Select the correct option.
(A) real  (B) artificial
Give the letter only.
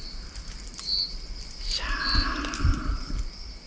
A